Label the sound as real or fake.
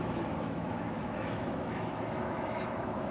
fake